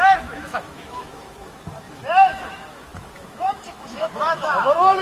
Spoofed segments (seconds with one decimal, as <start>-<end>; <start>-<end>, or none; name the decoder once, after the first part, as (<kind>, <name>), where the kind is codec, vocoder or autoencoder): 0.0-5.0 (autoencoder, DAC-VAE)